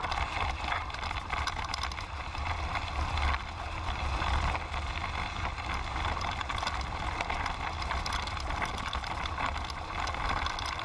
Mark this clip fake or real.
real